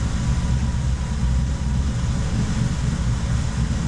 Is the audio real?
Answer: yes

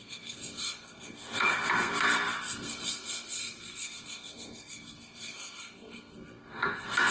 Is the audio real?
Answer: no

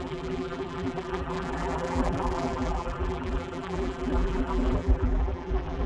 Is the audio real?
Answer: no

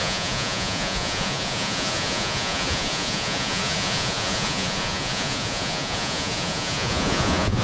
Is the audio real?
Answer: no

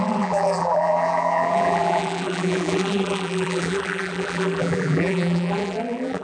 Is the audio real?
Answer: no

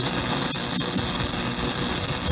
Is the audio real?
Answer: yes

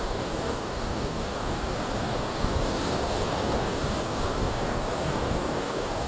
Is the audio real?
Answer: no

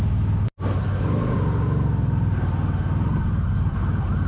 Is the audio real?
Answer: yes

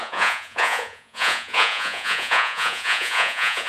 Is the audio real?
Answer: no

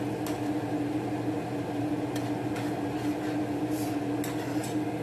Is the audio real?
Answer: yes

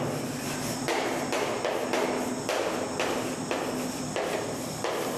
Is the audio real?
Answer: yes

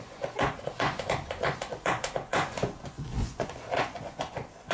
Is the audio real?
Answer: no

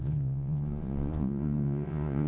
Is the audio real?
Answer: no